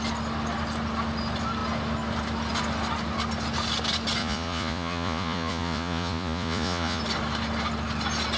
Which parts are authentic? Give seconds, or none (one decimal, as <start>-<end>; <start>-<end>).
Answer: 0.0-4.2; 7.0-8.4